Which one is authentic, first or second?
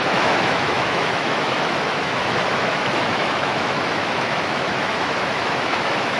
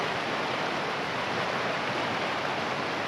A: second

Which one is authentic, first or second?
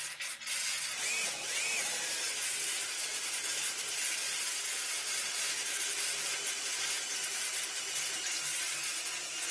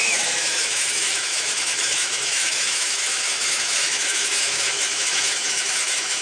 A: first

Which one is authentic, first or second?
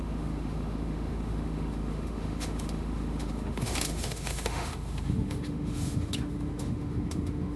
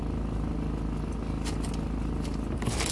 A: second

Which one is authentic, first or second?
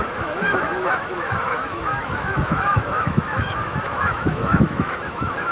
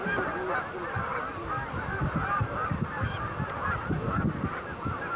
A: second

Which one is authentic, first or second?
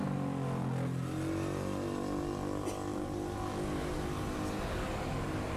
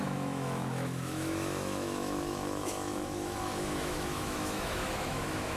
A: first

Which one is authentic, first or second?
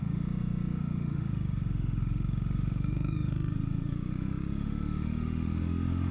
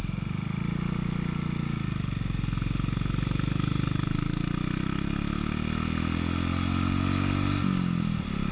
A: second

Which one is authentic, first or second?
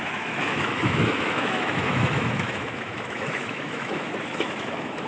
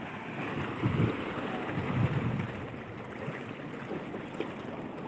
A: second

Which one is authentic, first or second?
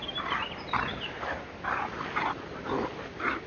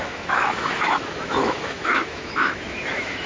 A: first